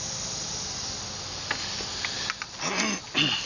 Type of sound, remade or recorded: recorded